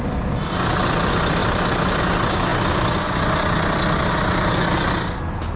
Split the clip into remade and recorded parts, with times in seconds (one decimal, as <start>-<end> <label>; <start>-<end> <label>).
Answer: 0.0-5.6 recorded